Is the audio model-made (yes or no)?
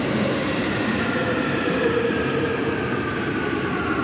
yes